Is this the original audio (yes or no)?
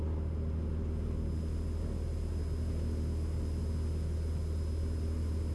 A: yes